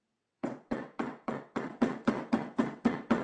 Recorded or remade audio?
remade